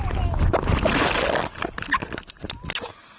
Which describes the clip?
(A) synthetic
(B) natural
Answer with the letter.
B